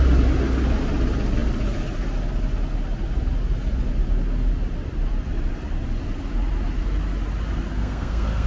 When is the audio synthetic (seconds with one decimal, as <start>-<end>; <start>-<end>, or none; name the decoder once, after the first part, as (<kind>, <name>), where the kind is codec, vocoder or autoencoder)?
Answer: 7.7-8.5 (codec, SNAC)